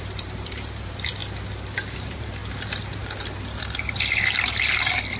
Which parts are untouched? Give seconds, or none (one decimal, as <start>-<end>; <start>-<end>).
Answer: 1.2-2.0; 2.4-3.0